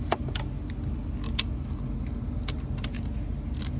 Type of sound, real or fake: real